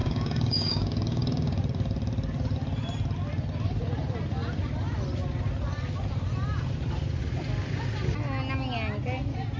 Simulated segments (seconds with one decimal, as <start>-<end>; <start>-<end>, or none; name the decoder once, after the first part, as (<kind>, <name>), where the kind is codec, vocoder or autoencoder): 0.0-1.6 (codec, DAC)